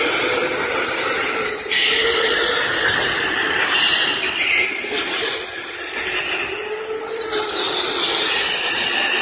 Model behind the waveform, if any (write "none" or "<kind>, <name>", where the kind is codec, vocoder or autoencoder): vocoder, BigVGAN v2